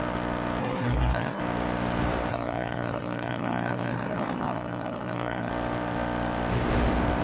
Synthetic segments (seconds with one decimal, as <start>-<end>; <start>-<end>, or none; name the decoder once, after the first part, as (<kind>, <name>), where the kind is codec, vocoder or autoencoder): 0.6-1.4 (codec, SNAC); 2.3-5.5